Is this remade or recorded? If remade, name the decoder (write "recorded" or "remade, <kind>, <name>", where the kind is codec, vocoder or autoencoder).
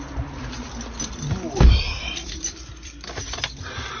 remade, vocoder, BigVGAN v2